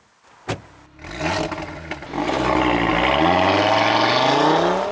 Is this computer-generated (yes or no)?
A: no